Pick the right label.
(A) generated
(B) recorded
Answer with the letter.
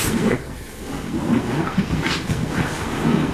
A